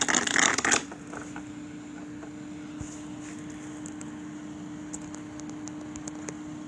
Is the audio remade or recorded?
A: recorded